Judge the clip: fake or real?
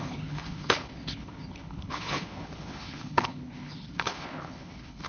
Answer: fake